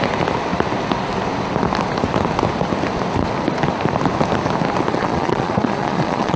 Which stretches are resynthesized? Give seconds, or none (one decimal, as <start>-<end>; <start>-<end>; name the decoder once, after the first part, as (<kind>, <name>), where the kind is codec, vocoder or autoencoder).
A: 4.9-6.4 (vocoder, Vocos)